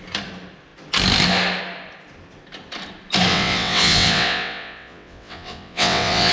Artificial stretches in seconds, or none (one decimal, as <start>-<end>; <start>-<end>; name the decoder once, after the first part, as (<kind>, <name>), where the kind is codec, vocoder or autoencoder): 3.3-6.3 (vocoder, WaveNeXt)